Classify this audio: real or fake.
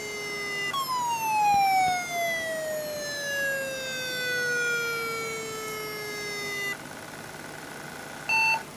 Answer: real